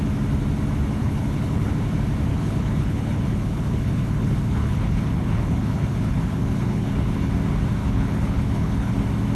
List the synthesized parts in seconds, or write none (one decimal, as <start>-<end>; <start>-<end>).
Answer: 1.0-1.7; 2.3-7.3; 7.8-8.9

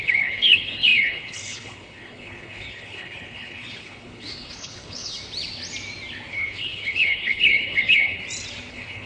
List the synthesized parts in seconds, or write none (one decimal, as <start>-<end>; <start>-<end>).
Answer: 0.0-5.2; 6.3-8.2; 8.7-9.1

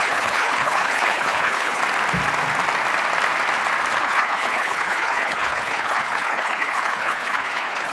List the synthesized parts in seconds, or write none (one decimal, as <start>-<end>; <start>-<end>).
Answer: 0.0-1.8; 4.0-7.9

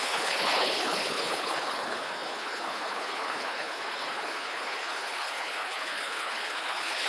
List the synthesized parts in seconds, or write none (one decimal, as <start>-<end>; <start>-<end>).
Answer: 0.0-7.1

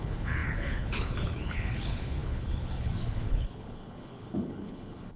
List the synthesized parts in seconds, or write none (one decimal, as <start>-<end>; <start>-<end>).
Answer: 0.0-5.2

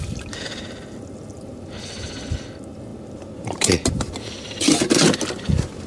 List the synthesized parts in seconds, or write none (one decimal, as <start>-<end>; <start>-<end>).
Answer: none

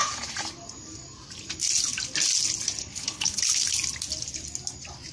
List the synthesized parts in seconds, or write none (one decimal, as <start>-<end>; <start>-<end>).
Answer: 2.8-3.4